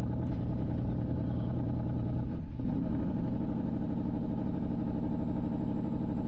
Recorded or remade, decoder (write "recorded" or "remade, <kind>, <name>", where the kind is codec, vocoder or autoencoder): remade, vocoder, BigVGAN v2